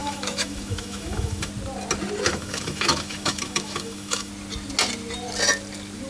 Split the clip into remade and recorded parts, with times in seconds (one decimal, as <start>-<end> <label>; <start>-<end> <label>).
0.0-1.5 remade; 1.5-2.3 recorded; 2.3-4.3 remade; 4.3-6.1 recorded